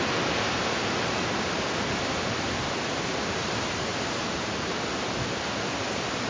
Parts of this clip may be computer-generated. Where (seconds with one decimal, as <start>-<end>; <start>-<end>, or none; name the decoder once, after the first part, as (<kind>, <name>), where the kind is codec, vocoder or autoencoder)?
none